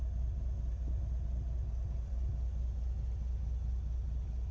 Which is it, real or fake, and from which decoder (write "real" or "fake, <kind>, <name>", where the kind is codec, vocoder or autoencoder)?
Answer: real